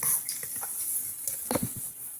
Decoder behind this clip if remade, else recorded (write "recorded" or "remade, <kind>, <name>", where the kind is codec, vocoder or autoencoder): recorded